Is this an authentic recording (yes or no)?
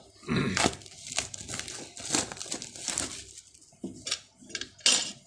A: yes